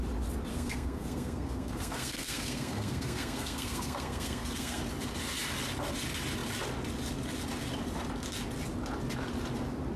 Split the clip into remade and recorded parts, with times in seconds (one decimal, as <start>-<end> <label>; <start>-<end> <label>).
0.0-0.5 recorded; 0.5-4.8 remade; 4.8-10.0 recorded